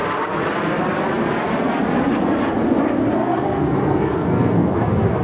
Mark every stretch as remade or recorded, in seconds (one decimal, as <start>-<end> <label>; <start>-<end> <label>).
0.0-3.2 recorded; 3.2-5.2 remade

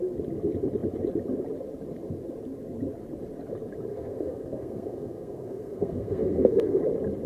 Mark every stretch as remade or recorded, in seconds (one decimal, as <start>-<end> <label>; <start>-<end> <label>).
0.0-3.9 recorded; 3.9-6.8 remade; 6.8-7.3 recorded

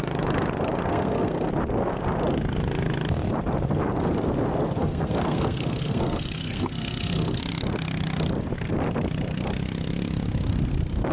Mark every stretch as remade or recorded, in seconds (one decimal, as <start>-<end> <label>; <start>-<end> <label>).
0.0-0.9 recorded; 0.9-1.5 remade; 1.5-4.8 recorded; 4.8-7.4 remade; 7.4-11.1 recorded

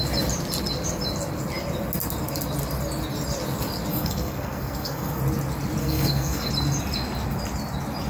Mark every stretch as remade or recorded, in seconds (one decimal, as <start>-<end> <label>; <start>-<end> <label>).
0.0-3.9 recorded; 3.9-5.2 remade; 5.2-5.8 recorded; 5.8-6.5 remade; 6.5-8.1 recorded

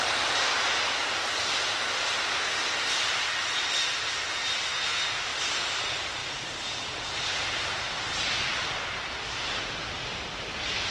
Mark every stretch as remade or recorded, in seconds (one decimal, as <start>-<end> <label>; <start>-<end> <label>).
0.0-10.9 recorded